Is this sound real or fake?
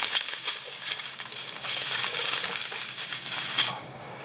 fake